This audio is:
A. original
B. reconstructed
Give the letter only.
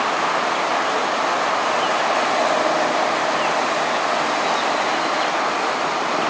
A